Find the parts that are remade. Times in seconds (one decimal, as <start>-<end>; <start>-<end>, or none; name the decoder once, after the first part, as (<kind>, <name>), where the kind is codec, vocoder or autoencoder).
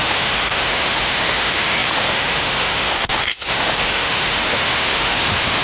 0.0-5.6 (autoencoder, DAC-VAE)